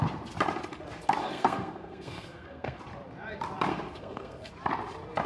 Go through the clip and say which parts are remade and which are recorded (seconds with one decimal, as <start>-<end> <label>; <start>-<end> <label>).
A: 0.0-1.2 recorded; 1.2-2.8 remade; 2.8-3.7 recorded; 3.7-4.5 remade; 4.5-5.3 recorded